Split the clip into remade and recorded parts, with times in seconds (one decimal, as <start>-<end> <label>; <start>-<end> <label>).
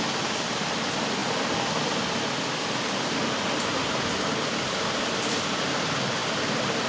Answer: 0.0-6.9 recorded